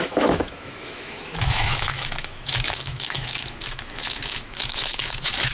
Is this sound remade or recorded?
remade